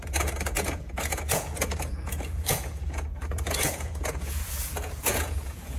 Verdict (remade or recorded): remade